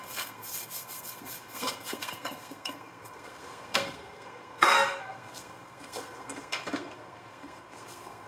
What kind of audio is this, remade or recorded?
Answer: remade